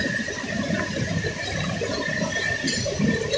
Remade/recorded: recorded